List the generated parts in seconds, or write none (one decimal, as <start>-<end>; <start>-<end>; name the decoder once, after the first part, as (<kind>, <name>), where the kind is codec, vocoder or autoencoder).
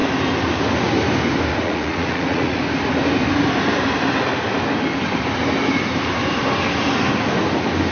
1.5-2.6 (vocoder, Vocos)